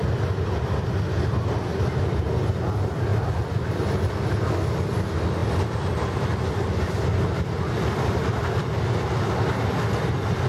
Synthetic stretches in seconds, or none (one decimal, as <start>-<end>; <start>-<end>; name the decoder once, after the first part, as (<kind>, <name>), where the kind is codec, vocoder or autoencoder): none